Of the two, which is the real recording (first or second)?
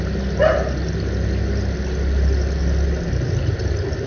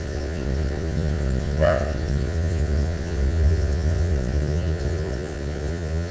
first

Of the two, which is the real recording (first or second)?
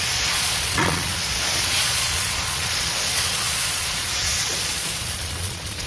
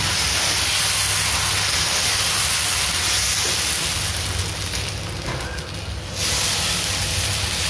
second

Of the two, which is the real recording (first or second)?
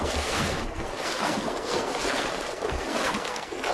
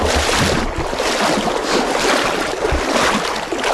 second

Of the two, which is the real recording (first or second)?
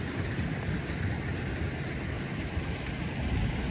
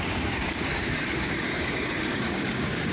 first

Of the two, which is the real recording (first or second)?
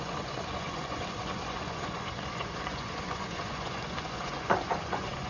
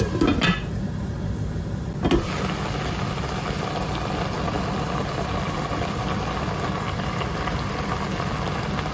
second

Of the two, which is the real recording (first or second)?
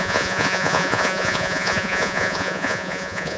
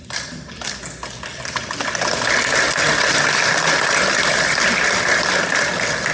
second